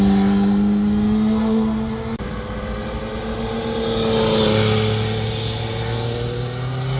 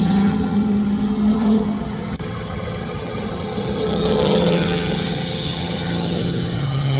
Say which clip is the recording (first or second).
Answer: first